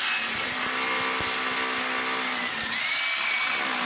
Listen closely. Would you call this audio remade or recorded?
recorded